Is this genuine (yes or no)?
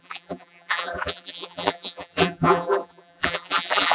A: no